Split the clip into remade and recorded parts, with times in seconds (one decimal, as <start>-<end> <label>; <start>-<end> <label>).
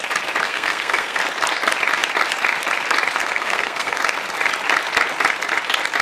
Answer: 0.0-0.4 recorded; 0.4-1.2 remade; 1.2-3.2 recorded; 3.2-4.0 remade; 4.0-6.0 recorded